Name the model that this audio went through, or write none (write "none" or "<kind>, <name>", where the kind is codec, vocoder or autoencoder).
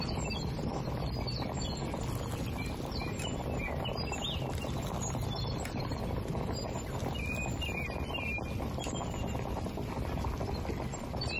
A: none